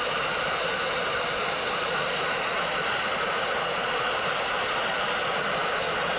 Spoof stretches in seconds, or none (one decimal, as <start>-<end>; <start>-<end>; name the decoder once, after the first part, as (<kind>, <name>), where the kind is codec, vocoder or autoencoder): none